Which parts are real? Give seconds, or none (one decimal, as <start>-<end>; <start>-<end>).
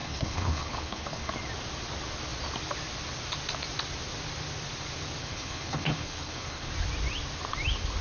1.3-5.2; 6.7-8.0